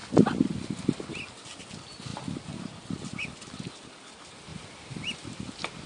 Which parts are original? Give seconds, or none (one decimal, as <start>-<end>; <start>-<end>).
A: 0.0-1.1; 2.1-3.9